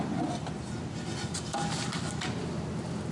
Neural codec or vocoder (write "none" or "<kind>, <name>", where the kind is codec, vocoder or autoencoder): none